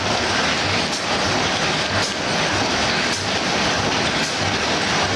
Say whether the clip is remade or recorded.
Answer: recorded